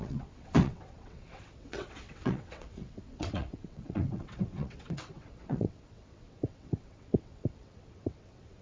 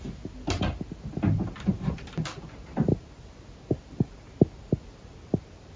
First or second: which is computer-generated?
first